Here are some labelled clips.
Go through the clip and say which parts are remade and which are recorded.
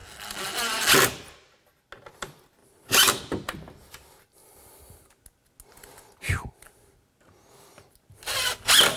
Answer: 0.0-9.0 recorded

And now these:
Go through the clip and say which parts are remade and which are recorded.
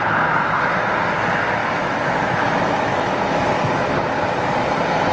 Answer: 0.0-1.6 recorded; 1.6-3.4 remade; 3.4-5.1 recorded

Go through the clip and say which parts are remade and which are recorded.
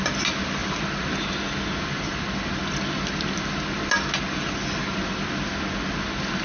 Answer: 0.0-6.4 recorded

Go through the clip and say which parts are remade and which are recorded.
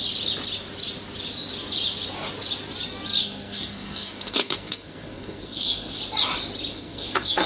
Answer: 0.0-3.2 recorded; 3.2-6.0 remade; 6.0-6.7 recorded; 6.7-7.5 remade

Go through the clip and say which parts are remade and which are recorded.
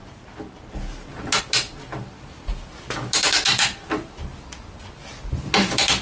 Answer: 0.0-6.0 recorded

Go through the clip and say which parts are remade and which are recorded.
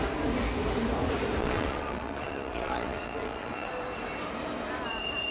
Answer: 0.0-1.4 recorded; 1.4-3.7 remade; 3.7-5.3 recorded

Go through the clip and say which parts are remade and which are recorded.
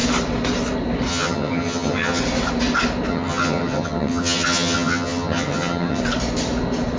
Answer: 0.0-1.1 recorded; 1.1-2.2 remade; 2.2-3.1 recorded; 3.1-6.0 remade; 6.0-7.0 recorded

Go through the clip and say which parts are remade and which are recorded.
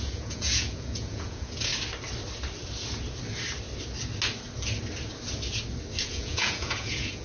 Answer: 0.0-1.7 remade; 1.7-6.0 recorded; 6.0-7.2 remade